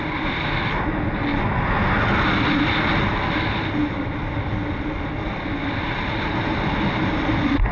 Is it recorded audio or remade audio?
recorded